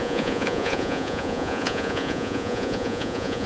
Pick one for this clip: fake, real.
fake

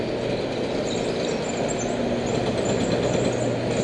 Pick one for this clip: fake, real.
real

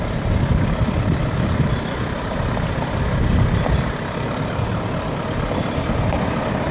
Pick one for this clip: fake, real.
real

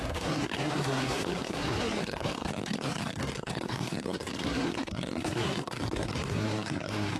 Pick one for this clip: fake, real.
fake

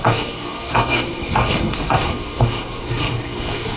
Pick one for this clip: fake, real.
fake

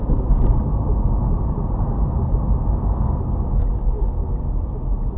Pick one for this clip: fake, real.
real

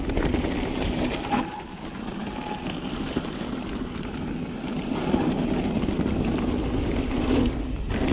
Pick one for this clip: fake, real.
real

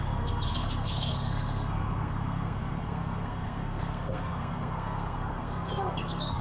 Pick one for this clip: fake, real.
fake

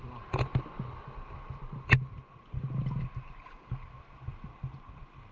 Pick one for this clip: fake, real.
real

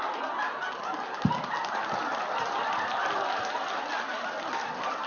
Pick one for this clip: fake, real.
real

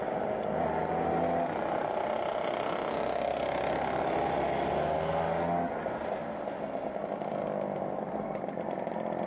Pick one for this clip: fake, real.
real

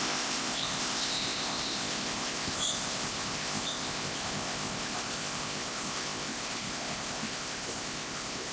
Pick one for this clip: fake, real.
fake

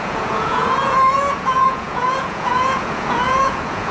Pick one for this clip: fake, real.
fake